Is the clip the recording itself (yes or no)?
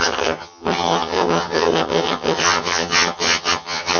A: no